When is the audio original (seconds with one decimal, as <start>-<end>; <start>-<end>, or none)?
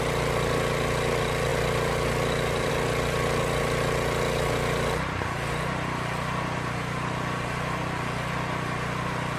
0.0-1.5; 2.7-9.4